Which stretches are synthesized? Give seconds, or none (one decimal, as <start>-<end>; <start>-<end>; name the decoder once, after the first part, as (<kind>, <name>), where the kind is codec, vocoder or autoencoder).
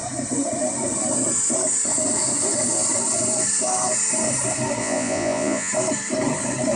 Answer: 4.8-5.7 (vocoder, Vocos)